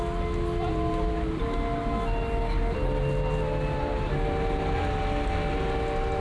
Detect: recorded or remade recorded